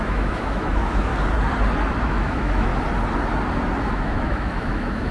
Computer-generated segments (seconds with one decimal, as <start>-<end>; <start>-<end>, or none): 0.0-1.1; 2.0-2.7; 3.9-5.1